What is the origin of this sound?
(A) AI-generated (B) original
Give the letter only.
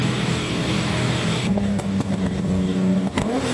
A